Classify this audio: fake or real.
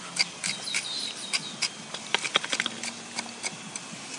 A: real